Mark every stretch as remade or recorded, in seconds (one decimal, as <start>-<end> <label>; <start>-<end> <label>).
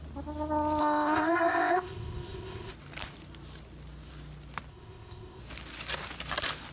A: 0.0-0.8 recorded; 0.8-2.7 remade; 2.7-4.7 recorded; 4.7-5.4 remade; 5.4-6.7 recorded